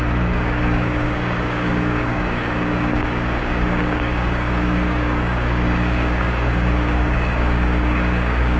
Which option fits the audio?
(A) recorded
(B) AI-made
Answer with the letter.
B